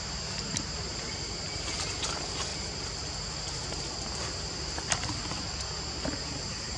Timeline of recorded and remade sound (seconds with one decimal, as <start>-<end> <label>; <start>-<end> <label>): 0.0-2.5 remade; 2.5-5.9 recorded; 5.9-6.8 remade